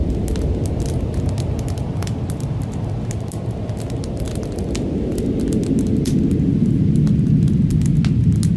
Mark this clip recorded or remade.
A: recorded